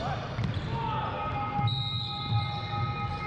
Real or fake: real